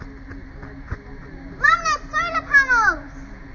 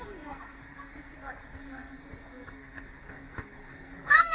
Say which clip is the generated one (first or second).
second